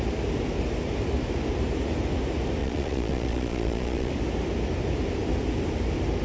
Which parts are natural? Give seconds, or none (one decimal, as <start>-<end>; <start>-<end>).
0.0-2.6; 4.1-6.2